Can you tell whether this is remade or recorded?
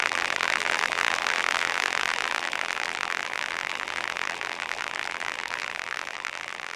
remade